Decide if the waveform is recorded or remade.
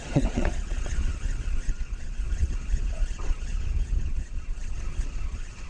remade